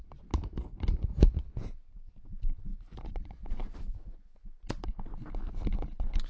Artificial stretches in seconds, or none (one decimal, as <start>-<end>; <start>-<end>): 2.7-3.4